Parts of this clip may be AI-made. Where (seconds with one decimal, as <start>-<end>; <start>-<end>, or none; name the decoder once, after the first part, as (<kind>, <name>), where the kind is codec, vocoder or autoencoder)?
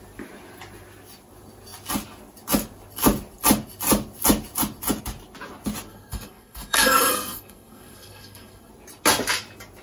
5.9-8.7 (codec, SNAC)